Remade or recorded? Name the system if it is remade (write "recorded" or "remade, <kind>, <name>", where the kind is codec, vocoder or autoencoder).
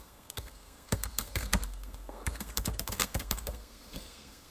remade, codec, SNAC